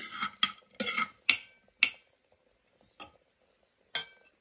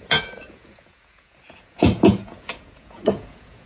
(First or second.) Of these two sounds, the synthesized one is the second